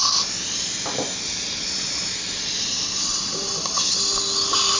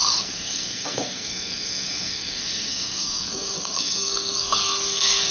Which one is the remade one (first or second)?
second